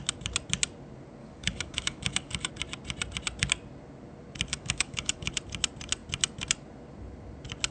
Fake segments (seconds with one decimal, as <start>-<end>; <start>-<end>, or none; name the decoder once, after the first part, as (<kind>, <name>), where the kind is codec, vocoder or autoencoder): 1.2-2.5 (codec, DAC); 4.5-5.3